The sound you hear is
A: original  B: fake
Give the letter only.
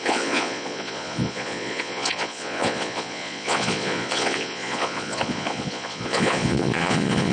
B